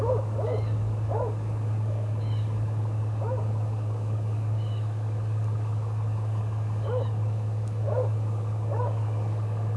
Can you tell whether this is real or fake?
fake